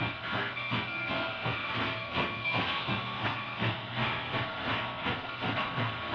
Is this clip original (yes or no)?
no